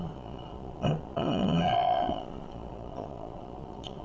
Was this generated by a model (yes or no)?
yes